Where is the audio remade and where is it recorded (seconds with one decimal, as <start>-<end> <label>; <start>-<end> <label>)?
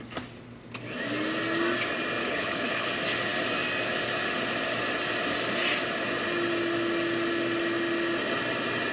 0.0-2.2 recorded; 2.2-2.9 remade; 2.9-8.9 recorded